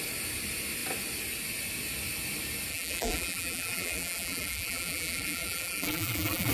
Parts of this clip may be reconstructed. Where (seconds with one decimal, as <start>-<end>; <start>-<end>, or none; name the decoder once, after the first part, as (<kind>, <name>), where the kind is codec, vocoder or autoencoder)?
2.7-6.5 (vocoder, BigVGAN v2)